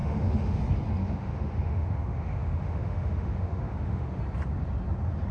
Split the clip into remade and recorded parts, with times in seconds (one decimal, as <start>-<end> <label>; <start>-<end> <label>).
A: 0.0-0.6 remade; 0.6-1.0 recorded; 1.0-4.2 remade; 4.2-5.3 recorded